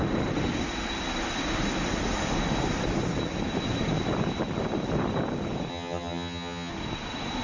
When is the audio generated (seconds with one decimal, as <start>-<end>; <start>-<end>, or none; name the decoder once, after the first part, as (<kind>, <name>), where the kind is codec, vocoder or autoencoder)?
5.7-6.7 (vocoder, HiFi-GAN)